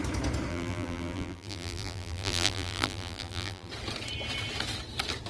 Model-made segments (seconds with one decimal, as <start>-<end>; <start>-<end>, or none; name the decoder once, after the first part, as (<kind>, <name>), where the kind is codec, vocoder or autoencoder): 0.5-3.7 (vocoder, BigVGAN v2)